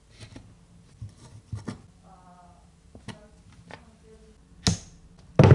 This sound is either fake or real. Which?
real